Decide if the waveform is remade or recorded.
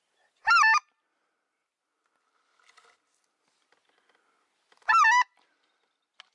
recorded